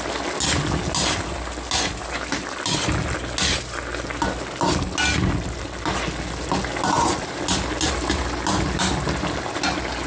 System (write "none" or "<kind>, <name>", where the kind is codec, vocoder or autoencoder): none